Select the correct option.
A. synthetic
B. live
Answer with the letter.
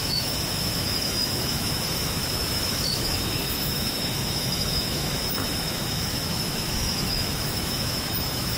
A